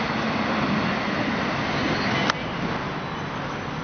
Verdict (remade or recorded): recorded